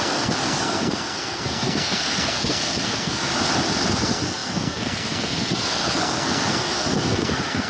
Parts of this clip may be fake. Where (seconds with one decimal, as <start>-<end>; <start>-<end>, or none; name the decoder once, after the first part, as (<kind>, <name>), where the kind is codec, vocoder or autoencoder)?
0.0-3.3 (codec, SNAC); 3.9-7.7